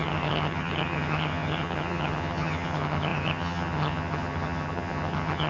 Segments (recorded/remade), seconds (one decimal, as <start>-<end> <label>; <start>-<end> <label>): 0.0-5.5 remade